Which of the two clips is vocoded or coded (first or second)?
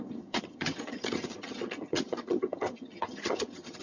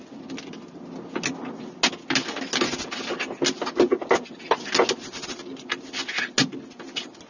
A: first